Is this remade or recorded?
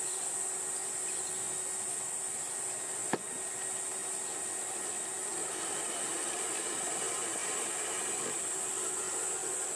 recorded